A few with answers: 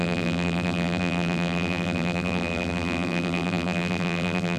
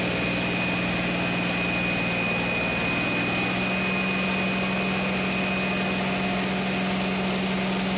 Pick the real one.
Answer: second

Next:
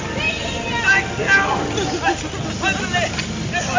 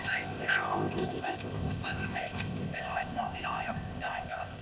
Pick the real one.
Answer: first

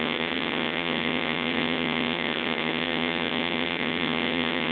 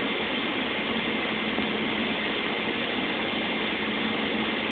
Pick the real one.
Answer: second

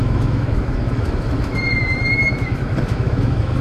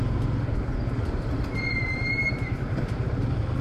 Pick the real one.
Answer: second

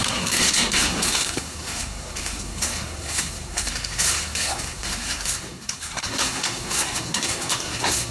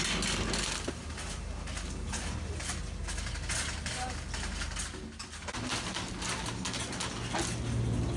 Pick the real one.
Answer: second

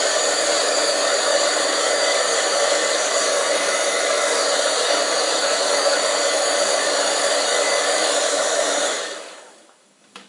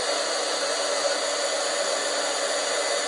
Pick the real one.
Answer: second